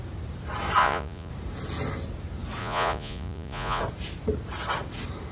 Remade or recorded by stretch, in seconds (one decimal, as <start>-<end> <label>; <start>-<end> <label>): 0.0-0.8 recorded; 0.8-1.3 remade; 1.3-2.6 recorded; 2.6-3.8 remade; 3.8-5.3 recorded